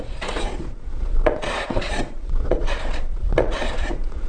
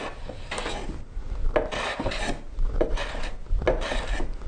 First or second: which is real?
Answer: second